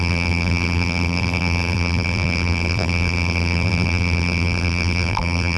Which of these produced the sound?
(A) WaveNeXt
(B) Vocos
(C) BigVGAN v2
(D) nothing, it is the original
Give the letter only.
C